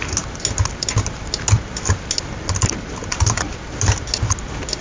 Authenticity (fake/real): real